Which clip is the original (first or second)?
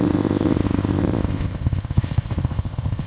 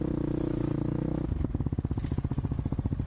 second